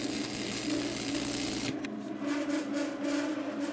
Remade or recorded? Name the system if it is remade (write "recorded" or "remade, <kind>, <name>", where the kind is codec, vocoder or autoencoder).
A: recorded